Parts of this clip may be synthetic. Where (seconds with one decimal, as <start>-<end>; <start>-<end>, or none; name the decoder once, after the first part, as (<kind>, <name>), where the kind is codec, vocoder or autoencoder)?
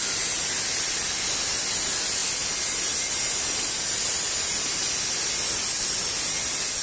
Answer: none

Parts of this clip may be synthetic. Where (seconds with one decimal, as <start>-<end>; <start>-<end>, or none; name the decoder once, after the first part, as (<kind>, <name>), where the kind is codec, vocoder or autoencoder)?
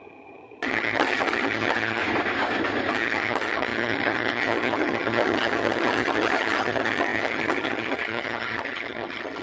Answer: 0.0-2.0 (vocoder, HiFi-GAN); 2.9-9.4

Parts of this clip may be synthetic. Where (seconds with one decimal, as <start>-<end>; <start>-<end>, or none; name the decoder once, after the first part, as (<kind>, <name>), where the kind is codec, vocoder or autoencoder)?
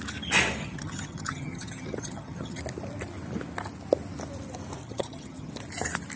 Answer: 0.6-2.6 (vocoder, HiFi-GAN); 4.8-5.5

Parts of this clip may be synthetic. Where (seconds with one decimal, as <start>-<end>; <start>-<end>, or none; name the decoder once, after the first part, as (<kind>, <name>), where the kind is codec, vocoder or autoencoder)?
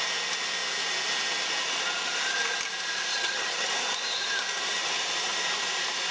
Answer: 3.1-3.7 (vocoder, HiFi-GAN)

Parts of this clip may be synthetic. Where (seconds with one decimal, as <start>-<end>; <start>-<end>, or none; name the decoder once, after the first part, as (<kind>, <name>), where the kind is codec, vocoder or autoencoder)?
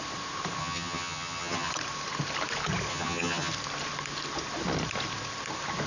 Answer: 0.6-1.7 (vocoder, HiFi-GAN); 2.9-3.5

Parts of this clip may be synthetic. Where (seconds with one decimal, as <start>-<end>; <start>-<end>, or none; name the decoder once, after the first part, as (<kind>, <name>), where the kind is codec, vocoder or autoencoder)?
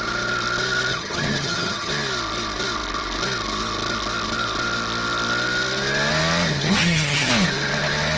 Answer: 0.9-1.9 (vocoder, HiFi-GAN); 6.5-7.3